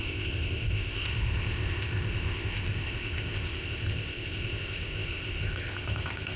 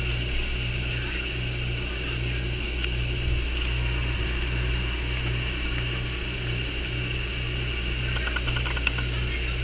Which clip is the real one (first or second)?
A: second